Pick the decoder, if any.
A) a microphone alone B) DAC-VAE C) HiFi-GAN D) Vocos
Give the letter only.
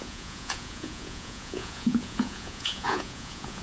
D